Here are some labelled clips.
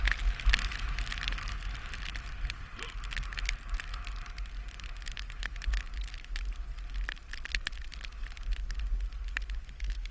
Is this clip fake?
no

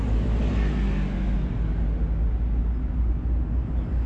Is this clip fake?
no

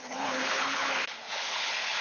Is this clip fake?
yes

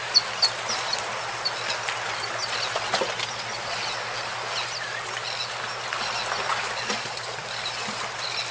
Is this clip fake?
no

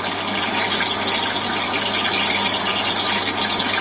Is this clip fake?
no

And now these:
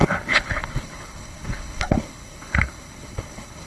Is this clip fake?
yes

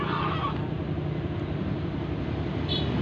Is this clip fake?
no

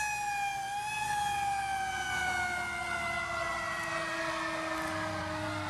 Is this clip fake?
no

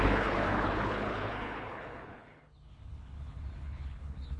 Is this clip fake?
yes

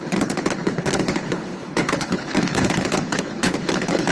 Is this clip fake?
yes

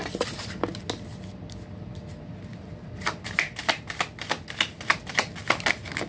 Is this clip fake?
no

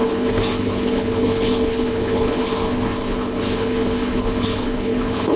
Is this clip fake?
yes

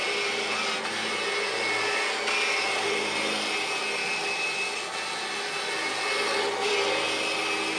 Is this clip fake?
no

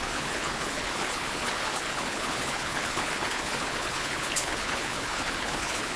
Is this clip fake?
yes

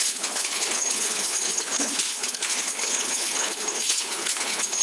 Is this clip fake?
yes